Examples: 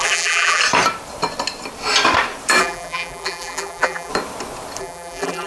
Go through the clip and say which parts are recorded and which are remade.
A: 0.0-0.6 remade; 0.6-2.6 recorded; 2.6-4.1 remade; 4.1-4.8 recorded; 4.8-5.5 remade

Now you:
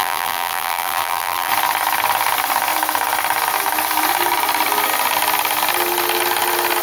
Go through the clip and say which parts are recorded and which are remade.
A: 0.0-1.5 remade; 1.5-6.8 recorded

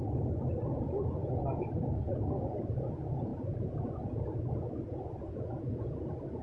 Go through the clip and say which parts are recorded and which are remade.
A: 0.0-1.2 remade; 1.2-2.1 recorded; 2.1-3.3 remade; 3.3-4.1 recorded; 4.1-6.4 remade

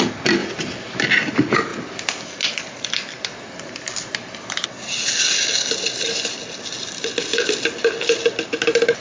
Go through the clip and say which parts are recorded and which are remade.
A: 0.0-9.0 recorded

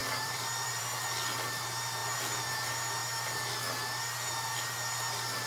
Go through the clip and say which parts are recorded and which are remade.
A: 0.0-0.8 remade; 0.8-5.5 recorded

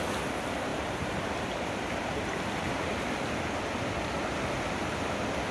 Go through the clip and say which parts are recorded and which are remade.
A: 0.0-0.7 recorded; 0.7-3.4 remade; 3.4-5.5 recorded

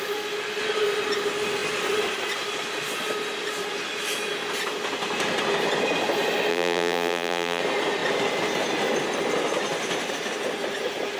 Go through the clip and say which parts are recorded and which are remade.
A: 0.0-6.5 recorded; 6.5-7.6 remade; 7.6-11.2 recorded

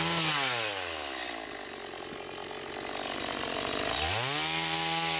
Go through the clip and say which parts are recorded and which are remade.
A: 0.0-5.2 recorded